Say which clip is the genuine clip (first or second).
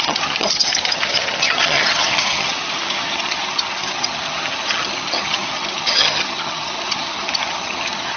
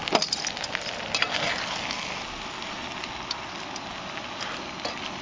second